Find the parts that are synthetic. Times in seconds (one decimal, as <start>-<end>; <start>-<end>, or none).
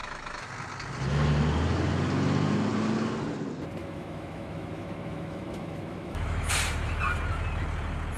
0.0-0.5; 3.8-6.5